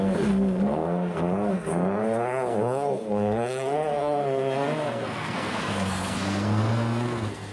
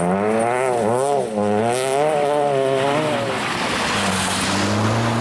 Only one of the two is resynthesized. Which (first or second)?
first